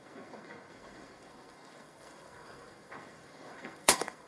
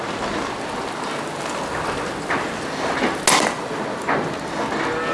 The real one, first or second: second